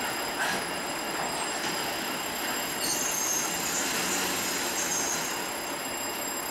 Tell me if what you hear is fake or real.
real